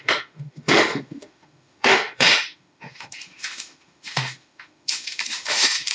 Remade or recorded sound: remade